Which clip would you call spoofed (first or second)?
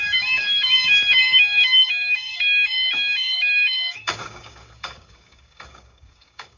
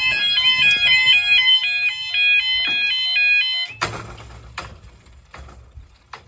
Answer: first